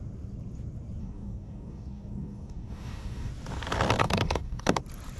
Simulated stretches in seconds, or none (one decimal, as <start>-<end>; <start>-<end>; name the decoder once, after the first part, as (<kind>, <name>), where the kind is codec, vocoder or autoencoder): 1.0-3.3 (codec, DAC); 4.0-4.8